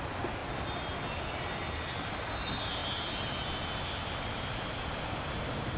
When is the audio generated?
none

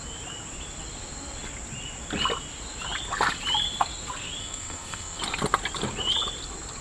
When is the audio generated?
4.4-5.2 (codec, SNAC)

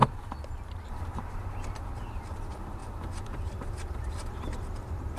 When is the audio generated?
0.9-5.2 (vocoder, BigVGAN v2)